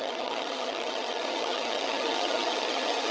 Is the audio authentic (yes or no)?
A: no